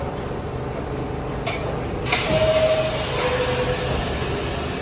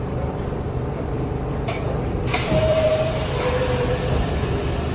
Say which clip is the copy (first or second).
second